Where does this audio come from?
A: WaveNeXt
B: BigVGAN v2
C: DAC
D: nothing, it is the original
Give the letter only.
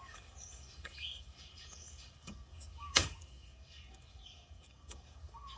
C